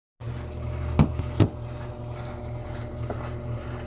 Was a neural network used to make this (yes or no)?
no